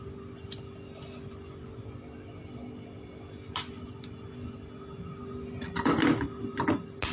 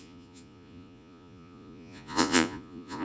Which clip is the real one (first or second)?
first